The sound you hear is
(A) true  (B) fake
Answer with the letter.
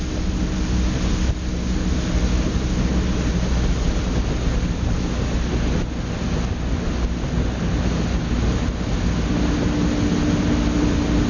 A